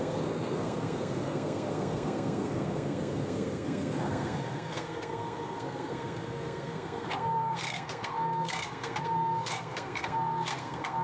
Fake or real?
fake